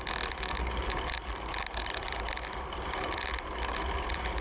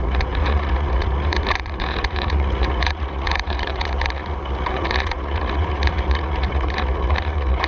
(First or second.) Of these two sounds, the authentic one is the first